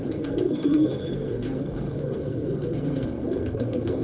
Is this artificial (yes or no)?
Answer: yes